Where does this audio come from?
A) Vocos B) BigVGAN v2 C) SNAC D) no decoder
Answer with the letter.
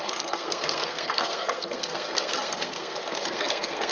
C